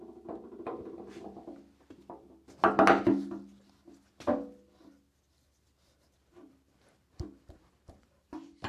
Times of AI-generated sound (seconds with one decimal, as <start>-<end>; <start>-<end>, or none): 6.3-8.7